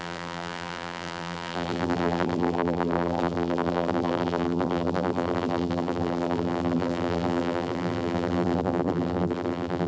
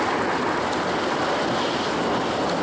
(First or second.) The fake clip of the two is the first